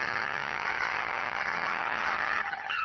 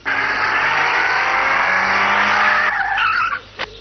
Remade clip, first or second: first